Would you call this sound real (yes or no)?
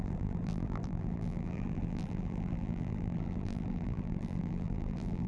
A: no